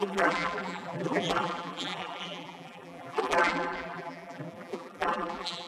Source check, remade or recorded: remade